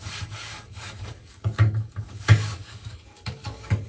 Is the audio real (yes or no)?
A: no